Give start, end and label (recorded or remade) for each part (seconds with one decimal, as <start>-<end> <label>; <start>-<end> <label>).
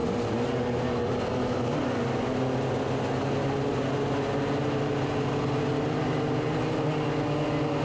0.0-7.8 recorded